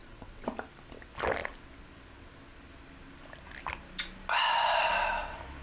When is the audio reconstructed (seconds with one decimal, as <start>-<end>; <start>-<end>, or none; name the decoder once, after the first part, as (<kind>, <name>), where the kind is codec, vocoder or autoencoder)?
0.0-0.5 (vocoder, WaveNeXt)